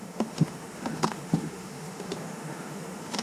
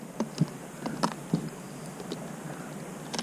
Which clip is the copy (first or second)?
first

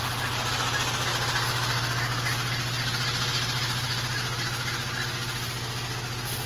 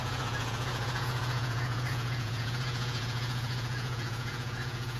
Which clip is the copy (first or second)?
second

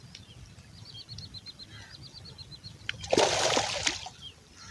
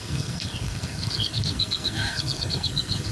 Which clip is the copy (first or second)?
second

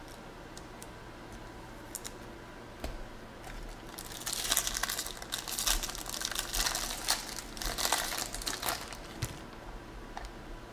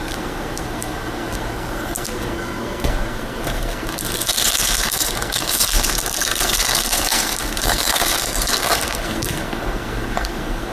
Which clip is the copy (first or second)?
second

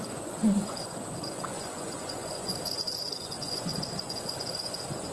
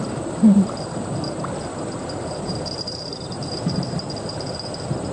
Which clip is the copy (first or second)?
first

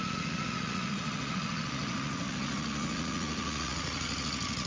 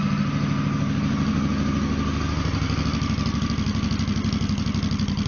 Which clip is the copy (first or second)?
first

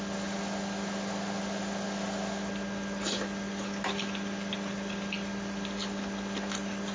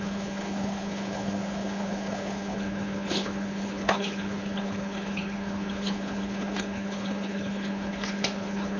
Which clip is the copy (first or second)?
second